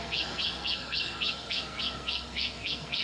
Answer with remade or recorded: remade